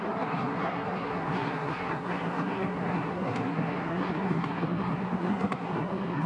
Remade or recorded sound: remade